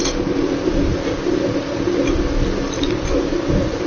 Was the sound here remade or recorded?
recorded